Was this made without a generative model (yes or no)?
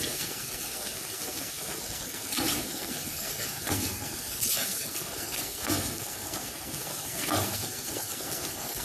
no